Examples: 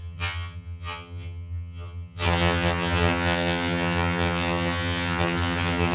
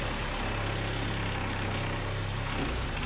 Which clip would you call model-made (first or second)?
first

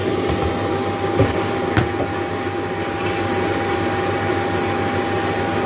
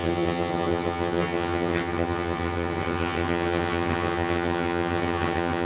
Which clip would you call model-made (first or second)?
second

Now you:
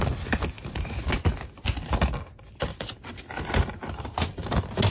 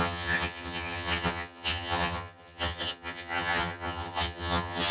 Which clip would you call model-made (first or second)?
second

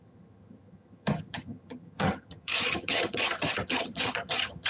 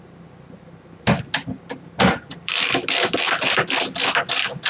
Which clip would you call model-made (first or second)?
first